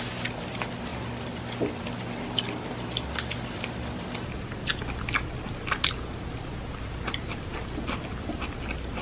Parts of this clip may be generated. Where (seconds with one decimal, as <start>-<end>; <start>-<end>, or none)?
none